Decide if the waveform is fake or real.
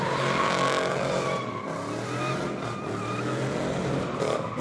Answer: real